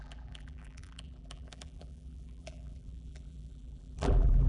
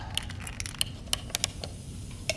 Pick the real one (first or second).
second